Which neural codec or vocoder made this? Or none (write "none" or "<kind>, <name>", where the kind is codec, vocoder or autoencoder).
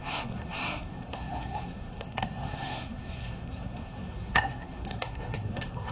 codec, SNAC